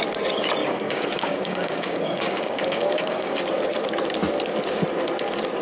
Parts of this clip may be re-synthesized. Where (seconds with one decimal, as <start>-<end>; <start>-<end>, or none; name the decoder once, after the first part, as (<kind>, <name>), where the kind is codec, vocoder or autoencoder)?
0.6-3.4 (codec, DAC)